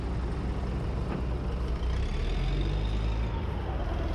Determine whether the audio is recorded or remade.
recorded